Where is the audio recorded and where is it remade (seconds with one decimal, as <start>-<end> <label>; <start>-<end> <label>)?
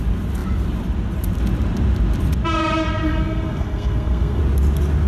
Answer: 0.0-3.1 recorded; 3.1-4.4 remade; 4.4-5.1 recorded